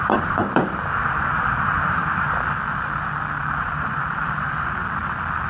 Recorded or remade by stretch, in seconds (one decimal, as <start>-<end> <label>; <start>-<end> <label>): 0.0-1.0 remade; 1.0-1.6 recorded; 1.6-2.0 remade; 2.0-3.6 recorded; 3.6-4.8 remade; 4.8-5.5 recorded